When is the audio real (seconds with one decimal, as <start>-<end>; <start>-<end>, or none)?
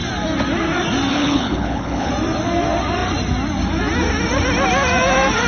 0.0-1.1; 2.1-5.5